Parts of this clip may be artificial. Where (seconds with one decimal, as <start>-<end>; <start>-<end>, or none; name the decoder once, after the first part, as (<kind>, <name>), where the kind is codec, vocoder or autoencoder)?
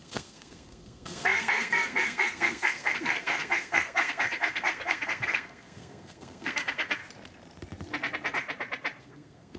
0.0-7.0 (codec, SNAC); 9.0-9.6